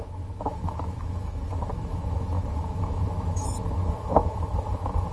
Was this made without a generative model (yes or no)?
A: no